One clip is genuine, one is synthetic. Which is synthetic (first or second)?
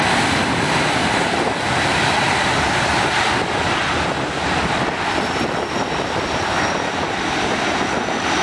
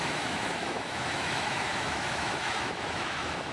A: second